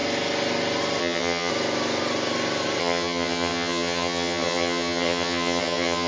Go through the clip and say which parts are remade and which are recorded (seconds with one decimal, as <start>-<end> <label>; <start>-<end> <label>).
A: 0.0-1.0 recorded; 1.0-1.5 remade; 1.5-2.8 recorded; 2.8-6.1 remade